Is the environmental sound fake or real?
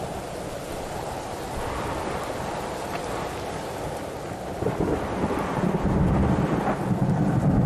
real